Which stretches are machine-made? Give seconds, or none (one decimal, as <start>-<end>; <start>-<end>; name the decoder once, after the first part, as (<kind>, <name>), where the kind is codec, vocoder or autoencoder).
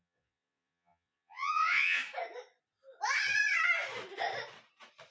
0.0-2.0 (vocoder, Vocos)